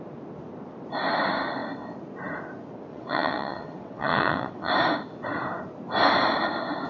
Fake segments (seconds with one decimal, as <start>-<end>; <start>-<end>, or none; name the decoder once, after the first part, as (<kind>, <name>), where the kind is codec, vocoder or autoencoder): 2.9-4.7 (vocoder, WaveNeXt)